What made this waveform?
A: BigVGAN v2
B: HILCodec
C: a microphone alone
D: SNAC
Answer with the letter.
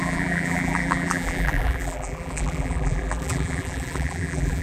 A